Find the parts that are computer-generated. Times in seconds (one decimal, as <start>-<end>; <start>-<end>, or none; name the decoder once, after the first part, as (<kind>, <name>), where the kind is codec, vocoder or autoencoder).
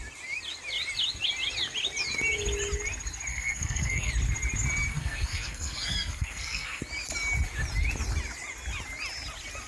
3.3-4.1 (codec, SNAC); 4.9-6.8